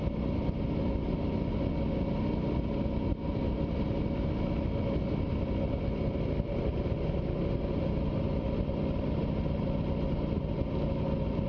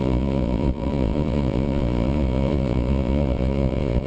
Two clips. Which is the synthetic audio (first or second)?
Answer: second